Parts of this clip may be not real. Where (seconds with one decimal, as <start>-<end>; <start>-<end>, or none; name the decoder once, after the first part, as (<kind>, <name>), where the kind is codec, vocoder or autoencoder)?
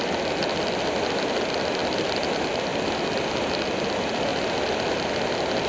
none